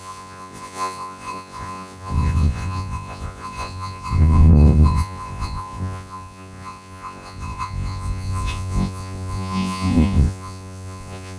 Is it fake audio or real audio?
fake